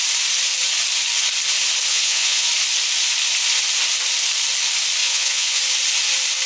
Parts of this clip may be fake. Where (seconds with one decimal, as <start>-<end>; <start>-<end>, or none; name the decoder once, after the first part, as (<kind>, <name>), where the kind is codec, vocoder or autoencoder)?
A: 1.9-2.5 (vocoder, Vocos); 5.0-5.6